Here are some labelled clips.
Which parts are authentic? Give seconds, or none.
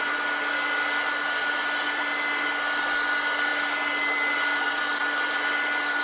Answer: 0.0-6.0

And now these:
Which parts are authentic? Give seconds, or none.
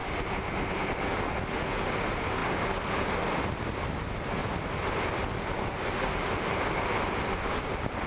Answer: 0.0-4.4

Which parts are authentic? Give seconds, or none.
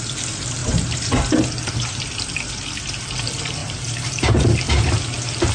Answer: 0.0-0.6; 2.0-3.6; 4.1-5.5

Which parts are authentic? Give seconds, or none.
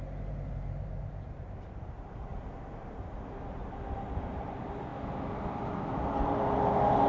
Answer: 2.3-3.9; 4.9-7.1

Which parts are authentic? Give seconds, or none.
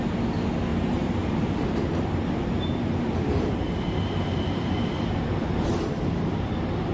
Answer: 0.0-0.7; 4.8-6.9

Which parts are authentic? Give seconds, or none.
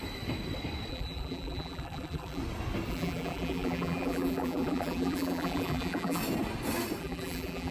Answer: 0.0-0.9; 2.4-2.9; 6.2-7.0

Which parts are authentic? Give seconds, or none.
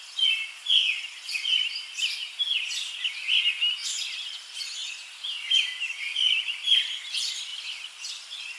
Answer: 0.0-0.8; 2.0-4.8; 5.9-7.5; 8.1-8.6